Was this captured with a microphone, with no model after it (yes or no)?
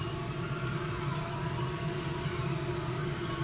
yes